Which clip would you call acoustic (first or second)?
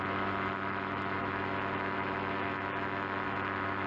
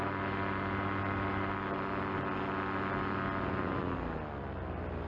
second